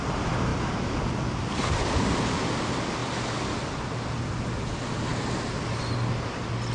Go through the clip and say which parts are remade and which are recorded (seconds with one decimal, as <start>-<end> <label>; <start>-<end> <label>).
0.0-6.7 recorded